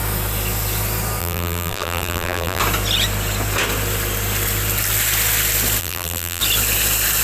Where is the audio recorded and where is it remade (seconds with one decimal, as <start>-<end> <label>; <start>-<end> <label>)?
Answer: 0.0-1.2 recorded; 1.2-2.6 remade; 2.6-5.8 recorded; 5.8-6.4 remade; 6.4-7.2 recorded